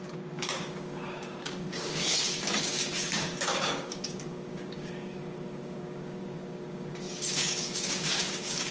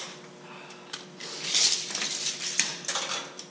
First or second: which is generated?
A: first